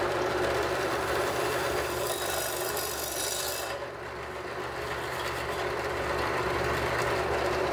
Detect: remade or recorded remade